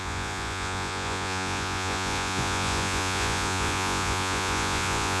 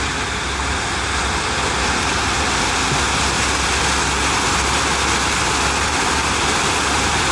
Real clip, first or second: second